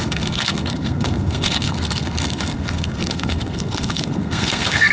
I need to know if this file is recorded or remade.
remade